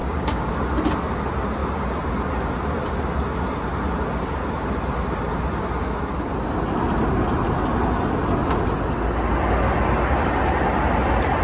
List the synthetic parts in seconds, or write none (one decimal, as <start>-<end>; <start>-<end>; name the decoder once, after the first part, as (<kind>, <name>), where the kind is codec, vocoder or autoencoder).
0.0-0.5 (codec, DAC)